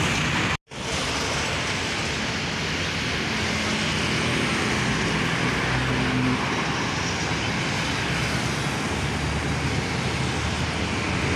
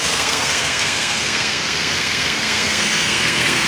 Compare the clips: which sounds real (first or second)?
first